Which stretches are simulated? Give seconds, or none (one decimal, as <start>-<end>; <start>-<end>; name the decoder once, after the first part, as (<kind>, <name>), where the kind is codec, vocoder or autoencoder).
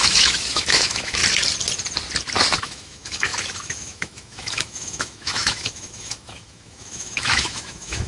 0.0-1.2 (autoencoder, DAC-VAE); 2.6-8.1